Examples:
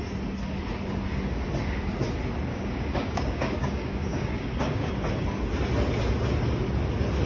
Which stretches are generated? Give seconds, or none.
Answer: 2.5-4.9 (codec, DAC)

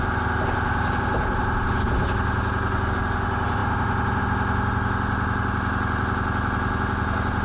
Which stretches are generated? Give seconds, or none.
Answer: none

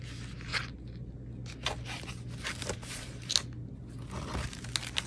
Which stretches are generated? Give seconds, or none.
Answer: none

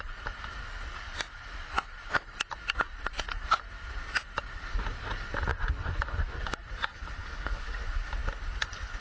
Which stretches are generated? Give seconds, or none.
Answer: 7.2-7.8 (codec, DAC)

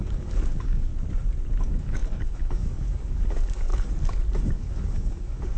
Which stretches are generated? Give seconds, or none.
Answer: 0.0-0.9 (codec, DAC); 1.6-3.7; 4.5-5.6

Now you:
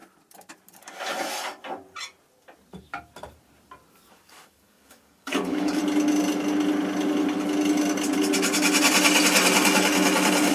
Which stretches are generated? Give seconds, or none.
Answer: 4.1-5.8 (codec, DAC)

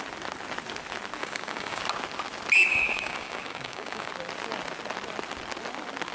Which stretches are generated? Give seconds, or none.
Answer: 1.2-1.8 (codec, DAC); 2.7-4.1